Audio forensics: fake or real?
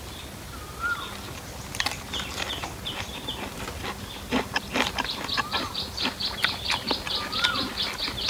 real